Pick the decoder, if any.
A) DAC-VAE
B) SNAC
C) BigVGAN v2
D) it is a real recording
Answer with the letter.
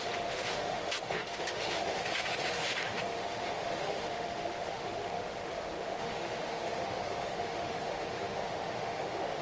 A